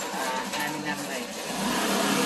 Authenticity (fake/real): real